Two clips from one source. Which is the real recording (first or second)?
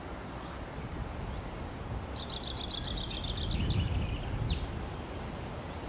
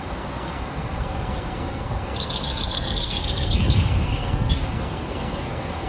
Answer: first